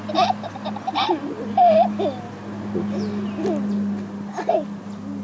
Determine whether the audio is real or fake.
real